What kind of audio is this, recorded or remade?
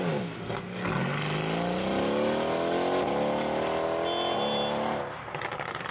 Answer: recorded